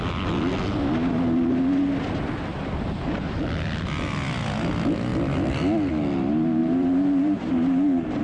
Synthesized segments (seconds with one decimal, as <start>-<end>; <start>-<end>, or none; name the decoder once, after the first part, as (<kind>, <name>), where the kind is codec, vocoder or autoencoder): 2.5-3.4 (vocoder, BigVGAN v2); 6.6-8.2